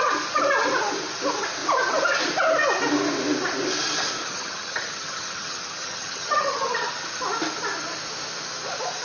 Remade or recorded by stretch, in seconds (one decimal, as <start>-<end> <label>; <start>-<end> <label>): 0.0-4.2 recorded; 4.2-7.2 remade; 7.2-9.0 recorded